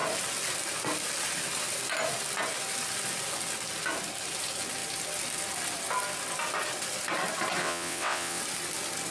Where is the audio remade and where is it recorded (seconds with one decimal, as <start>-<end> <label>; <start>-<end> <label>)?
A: 0.0-7.6 recorded; 7.6-8.4 remade; 8.4-9.1 recorded